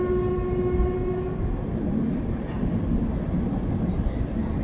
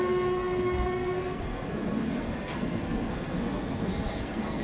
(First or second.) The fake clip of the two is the second